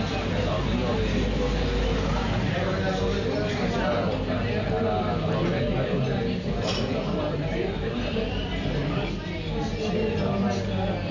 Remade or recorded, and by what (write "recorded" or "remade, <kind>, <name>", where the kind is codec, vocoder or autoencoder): recorded